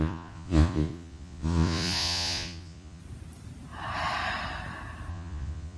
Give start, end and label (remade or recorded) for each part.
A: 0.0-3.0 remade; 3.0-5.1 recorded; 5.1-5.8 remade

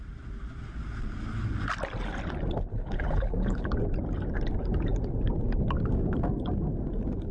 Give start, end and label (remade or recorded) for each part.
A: 0.0-2.7 recorded; 2.7-3.7 remade; 3.7-7.3 recorded

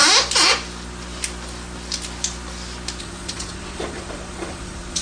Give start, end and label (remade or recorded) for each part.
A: 0.0-3.0 recorded; 3.0-5.0 remade

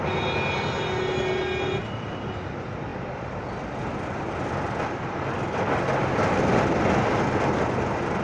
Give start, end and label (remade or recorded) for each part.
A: 0.0-8.2 recorded

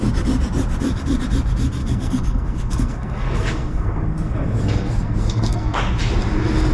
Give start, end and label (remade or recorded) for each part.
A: 0.0-1.8 recorded; 1.8-5.8 remade; 5.8-6.7 recorded

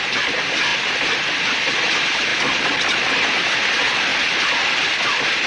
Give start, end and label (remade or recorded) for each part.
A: 0.0-2.3 remade; 2.3-3.1 recorded; 3.1-4.1 remade; 4.1-4.9 recorded; 4.9-5.5 remade

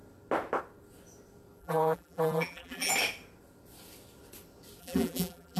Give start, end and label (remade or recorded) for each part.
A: 0.0-1.6 recorded; 1.6-2.9 remade; 2.9-4.8 recorded; 4.8-5.6 remade